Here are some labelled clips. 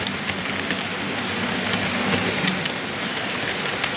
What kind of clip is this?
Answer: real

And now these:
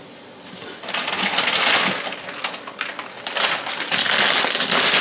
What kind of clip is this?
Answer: real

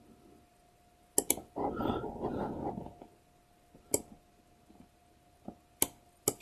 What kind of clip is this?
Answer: real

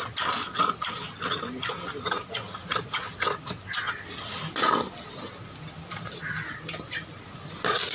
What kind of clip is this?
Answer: real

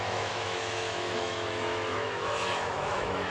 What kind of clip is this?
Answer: fake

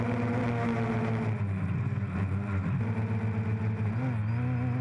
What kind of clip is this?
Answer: real